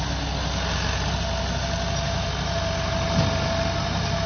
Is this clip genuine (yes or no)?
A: yes